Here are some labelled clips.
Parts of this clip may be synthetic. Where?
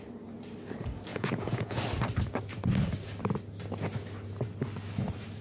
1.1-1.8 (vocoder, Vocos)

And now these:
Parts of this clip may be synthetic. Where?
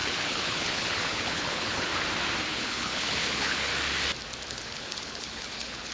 0.0-1.9 (codec, HILCodec); 2.5-3.7; 4.5-5.9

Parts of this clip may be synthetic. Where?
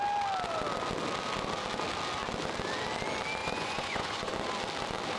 3.4-4.3 (vocoder, Vocos)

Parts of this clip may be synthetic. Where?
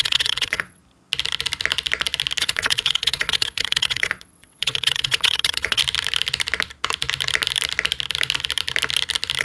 0.0-0.8 (vocoder, WaveNeXt); 2.4-5.8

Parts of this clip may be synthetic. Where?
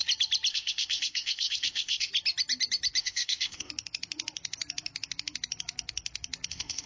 0.5-2.1 (codec, ZipCodec); 3.0-3.7; 6.5-6.9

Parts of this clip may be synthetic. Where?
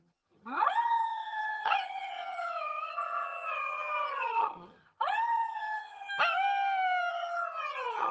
0.0-6.1 (vocoder, HiFi-GAN); 7.1-8.1